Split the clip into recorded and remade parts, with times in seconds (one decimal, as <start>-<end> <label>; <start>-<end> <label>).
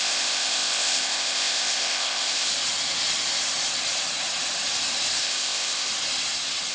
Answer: 0.0-2.5 remade; 2.5-5.2 recorded; 5.2-5.9 remade; 5.9-6.7 recorded